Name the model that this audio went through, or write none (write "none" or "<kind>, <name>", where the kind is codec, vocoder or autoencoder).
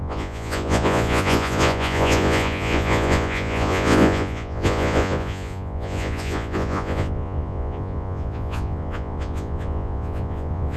vocoder, Vocos